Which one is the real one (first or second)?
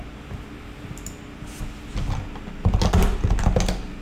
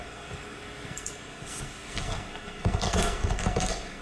first